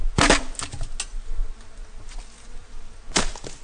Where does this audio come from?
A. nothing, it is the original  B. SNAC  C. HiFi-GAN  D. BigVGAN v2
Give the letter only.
A